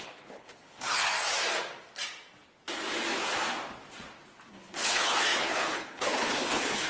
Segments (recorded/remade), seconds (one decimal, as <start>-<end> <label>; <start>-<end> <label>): 0.0-1.1 remade; 1.1-4.5 recorded; 4.5-6.9 remade